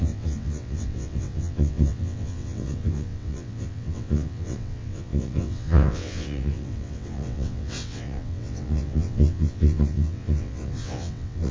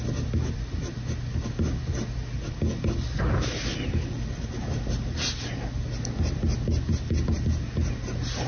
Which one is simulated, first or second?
first